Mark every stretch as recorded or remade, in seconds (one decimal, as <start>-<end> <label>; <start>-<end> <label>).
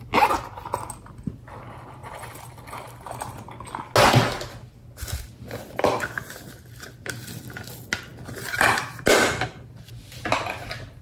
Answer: 0.0-11.0 recorded